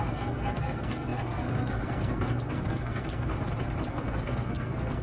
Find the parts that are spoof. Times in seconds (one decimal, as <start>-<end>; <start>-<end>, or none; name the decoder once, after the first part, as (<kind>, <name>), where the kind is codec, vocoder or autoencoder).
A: 0.0-3.3 (codec, SNAC); 3.9-5.0

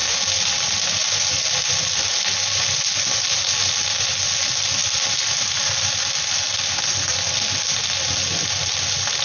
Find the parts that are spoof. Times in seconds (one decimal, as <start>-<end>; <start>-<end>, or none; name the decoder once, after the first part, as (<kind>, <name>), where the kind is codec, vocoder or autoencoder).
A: none